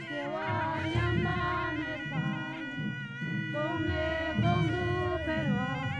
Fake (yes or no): no